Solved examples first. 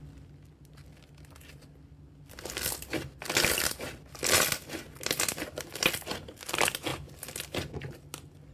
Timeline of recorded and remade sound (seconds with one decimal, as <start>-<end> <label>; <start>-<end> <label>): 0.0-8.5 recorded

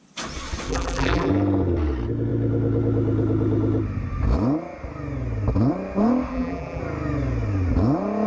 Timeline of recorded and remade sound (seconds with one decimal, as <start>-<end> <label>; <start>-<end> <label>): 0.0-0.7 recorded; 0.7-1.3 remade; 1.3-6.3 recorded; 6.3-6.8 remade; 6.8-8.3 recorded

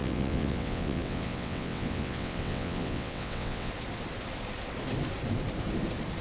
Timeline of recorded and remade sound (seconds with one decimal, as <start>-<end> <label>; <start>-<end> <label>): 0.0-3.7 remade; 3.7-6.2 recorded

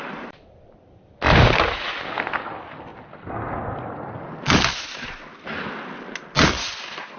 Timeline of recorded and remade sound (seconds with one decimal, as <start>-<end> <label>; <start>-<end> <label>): 0.0-7.2 recorded

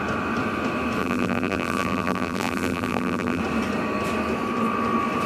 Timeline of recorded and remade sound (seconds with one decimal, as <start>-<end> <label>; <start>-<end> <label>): 0.0-1.0 recorded; 1.0-3.4 remade; 3.4-5.3 recorded

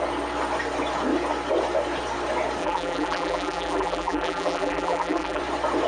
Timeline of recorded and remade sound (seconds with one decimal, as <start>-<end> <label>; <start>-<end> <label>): 0.0-2.6 recorded; 2.6-5.4 remade; 5.4-5.9 recorded